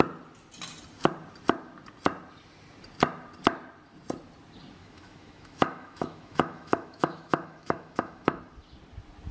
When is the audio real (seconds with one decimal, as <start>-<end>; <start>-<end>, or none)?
0.0-4.8; 8.4-9.3